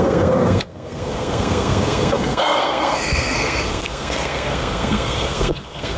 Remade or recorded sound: remade